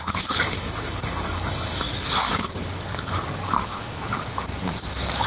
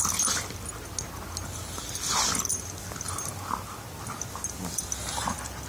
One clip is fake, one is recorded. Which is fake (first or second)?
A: first